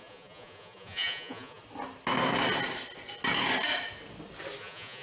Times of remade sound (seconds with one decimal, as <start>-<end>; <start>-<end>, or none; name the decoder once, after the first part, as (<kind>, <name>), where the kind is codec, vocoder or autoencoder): 0.0-1.6 (vocoder, Vocos); 4.6-5.0